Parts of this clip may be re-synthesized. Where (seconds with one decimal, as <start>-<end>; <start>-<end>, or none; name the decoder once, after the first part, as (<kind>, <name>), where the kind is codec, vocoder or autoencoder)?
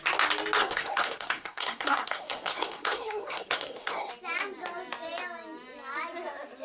0.6-4.1 (codec, SNAC)